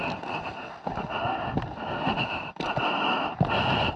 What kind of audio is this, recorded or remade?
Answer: recorded